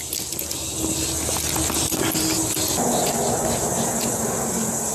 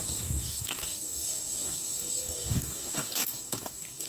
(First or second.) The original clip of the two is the first